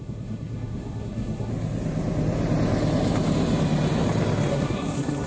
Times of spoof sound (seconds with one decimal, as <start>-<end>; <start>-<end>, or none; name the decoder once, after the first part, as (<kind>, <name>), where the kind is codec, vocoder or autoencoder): 0.0-1.5 (codec, SNAC); 4.5-5.3